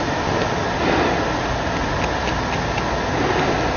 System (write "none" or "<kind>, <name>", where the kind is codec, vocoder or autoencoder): none